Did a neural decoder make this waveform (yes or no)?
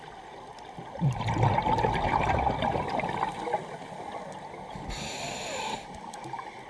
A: no